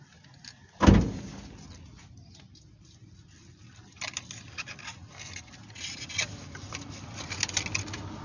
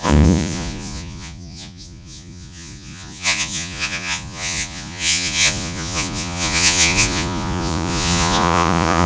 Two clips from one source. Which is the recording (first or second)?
first